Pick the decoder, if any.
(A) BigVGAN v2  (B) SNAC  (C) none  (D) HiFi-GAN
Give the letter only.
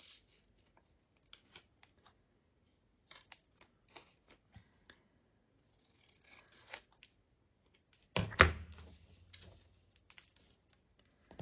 C